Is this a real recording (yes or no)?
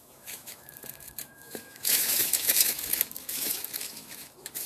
no